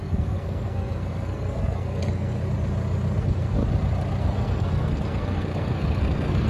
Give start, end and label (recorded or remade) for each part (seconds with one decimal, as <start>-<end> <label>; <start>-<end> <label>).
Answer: 0.0-2.4 remade; 2.4-3.2 recorded; 3.2-3.6 remade; 3.6-4.2 recorded; 4.2-6.5 remade